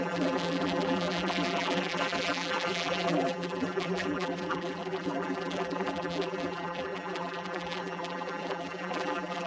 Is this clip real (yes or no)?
no